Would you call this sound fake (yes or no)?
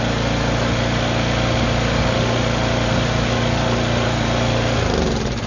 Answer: no